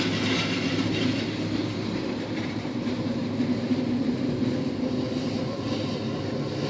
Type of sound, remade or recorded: recorded